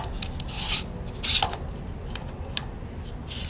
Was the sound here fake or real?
real